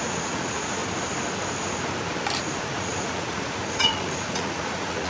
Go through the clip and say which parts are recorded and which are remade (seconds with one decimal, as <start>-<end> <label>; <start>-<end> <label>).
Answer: 0.0-0.8 remade; 0.8-2.4 recorded; 2.4-5.1 remade